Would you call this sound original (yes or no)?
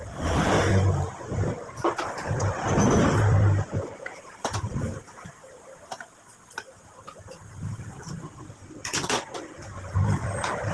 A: yes